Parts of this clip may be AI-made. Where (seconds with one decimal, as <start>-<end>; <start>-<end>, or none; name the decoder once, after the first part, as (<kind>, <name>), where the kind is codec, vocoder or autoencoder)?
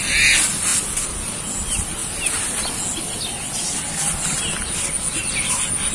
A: none